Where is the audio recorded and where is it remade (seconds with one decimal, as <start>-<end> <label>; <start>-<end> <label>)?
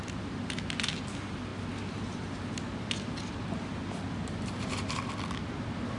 0.0-6.0 recorded